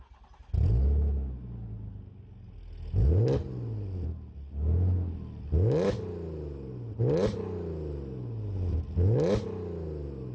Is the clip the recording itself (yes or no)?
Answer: yes